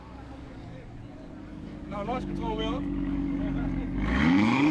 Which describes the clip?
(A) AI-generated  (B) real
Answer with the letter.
A